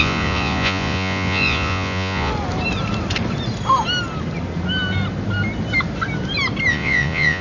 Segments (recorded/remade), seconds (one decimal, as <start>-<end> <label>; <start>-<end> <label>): 0.0-2.3 remade; 2.3-6.7 recorded; 6.7-7.4 remade